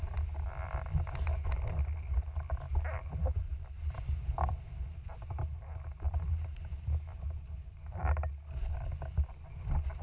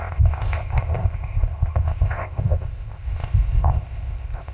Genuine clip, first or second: first